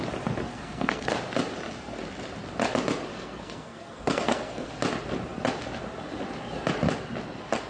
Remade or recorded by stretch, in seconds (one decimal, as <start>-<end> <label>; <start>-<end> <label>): 0.0-0.5 recorded; 0.5-1.1 remade; 1.1-3.1 recorded; 3.1-4.7 remade; 4.7-7.7 recorded